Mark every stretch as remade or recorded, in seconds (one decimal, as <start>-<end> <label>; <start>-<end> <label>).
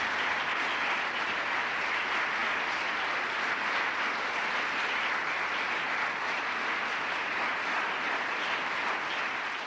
0.0-9.7 recorded